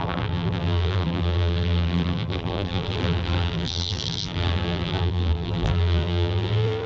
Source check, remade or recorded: remade